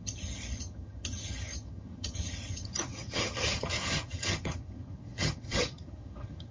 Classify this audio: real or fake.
fake